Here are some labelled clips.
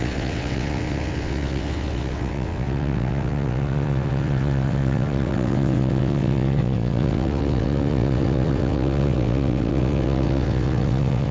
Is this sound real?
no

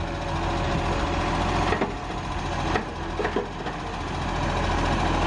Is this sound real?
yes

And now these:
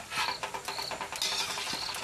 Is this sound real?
yes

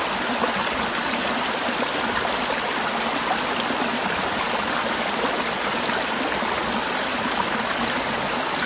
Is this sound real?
yes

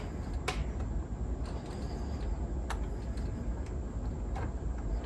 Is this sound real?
yes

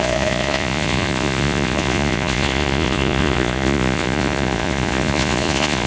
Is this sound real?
no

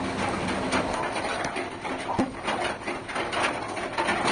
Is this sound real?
yes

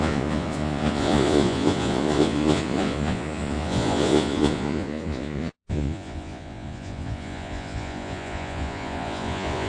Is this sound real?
no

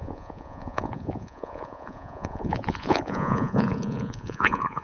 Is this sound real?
no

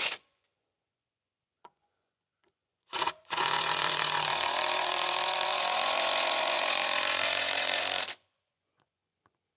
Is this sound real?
no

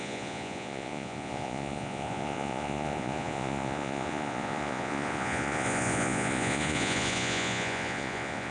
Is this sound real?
no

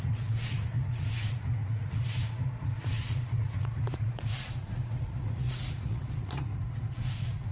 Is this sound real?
no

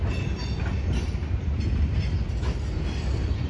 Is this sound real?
yes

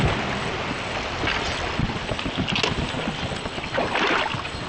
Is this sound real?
yes